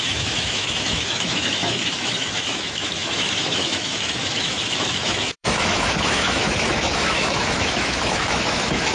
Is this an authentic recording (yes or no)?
no